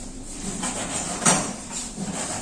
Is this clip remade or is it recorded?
remade